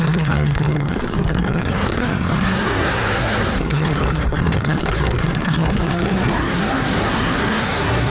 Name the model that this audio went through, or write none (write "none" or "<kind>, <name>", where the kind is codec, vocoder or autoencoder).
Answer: codec, SNAC